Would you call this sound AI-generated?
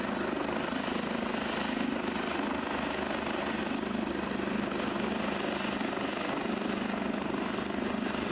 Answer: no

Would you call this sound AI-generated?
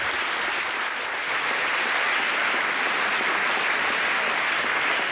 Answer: no